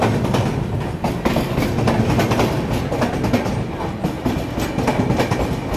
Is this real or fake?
real